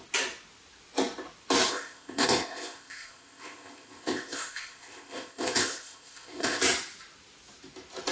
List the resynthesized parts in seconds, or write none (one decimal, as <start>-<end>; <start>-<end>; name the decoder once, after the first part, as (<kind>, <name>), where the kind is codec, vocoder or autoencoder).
1.7-6.6 (codec, ZipCodec)